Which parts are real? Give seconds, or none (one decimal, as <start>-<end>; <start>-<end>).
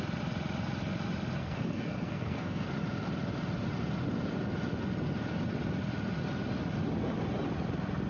0.0-1.4; 2.7-8.1